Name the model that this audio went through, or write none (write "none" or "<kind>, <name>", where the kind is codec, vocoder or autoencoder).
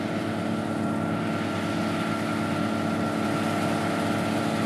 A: none